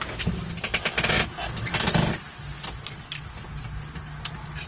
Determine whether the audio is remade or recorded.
recorded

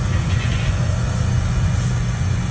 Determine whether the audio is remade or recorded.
remade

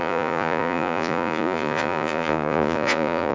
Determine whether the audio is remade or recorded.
remade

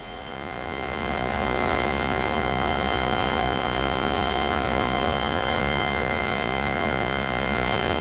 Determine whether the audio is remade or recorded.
remade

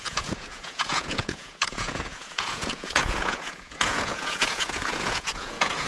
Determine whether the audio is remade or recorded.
remade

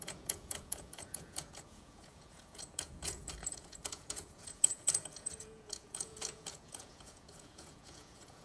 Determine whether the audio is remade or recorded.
remade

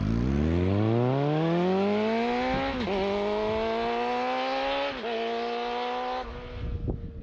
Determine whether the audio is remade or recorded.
recorded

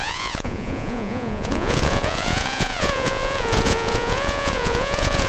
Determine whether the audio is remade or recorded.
remade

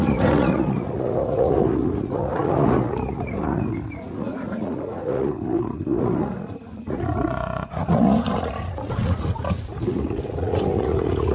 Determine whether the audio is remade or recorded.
remade